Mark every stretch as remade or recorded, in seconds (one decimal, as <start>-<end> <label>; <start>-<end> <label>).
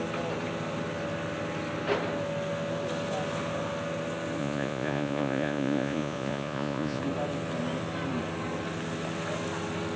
0.0-4.4 recorded; 4.4-7.0 remade; 7.0-10.0 recorded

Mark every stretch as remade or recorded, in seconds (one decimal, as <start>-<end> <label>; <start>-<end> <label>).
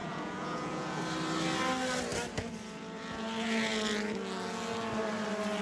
0.0-1.0 remade; 1.0-5.6 recorded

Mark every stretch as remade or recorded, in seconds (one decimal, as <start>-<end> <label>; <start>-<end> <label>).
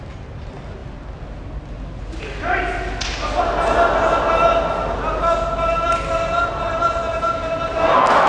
0.0-8.3 recorded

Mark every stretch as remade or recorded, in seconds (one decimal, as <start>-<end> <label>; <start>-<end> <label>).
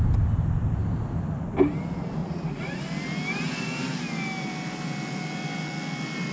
0.0-2.2 recorded; 2.2-2.8 remade; 2.8-6.3 recorded